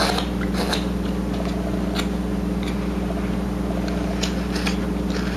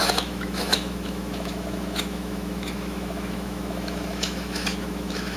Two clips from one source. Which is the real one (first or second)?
first